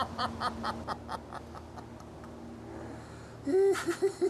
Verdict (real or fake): real